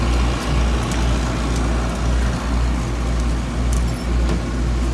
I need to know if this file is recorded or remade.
recorded